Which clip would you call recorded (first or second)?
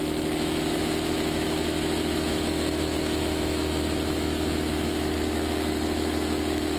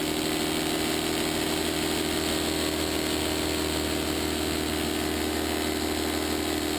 second